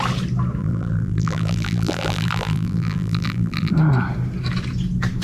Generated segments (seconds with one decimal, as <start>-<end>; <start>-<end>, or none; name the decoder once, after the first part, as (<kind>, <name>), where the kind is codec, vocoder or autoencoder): 0.6-3.7 (vocoder, BigVGAN v2)